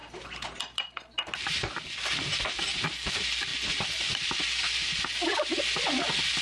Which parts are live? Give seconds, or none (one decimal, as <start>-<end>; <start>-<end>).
0.0-6.4